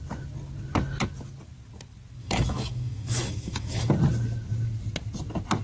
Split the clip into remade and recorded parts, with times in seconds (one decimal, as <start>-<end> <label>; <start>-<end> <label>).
0.0-2.2 recorded; 2.2-3.9 remade; 3.9-5.6 recorded